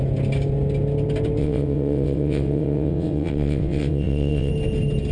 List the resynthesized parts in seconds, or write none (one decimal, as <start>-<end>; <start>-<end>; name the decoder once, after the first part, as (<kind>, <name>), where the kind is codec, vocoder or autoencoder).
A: 1.4-4.5 (vocoder, WaveNeXt)